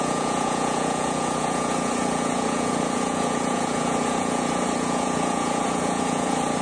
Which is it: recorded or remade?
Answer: remade